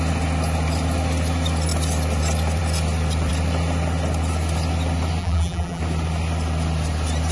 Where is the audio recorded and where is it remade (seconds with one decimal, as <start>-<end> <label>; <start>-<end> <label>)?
0.0-5.2 recorded; 5.2-5.8 remade; 5.8-7.3 recorded